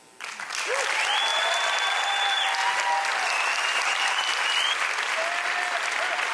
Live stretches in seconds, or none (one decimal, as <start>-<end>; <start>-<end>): 0.0-6.3